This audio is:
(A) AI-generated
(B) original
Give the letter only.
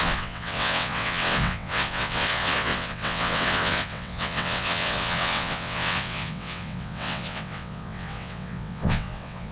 A